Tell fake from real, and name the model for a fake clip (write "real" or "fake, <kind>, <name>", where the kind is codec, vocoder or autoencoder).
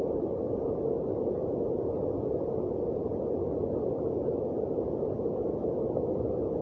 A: real